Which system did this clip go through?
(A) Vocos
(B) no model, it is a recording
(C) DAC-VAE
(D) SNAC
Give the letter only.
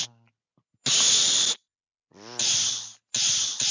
B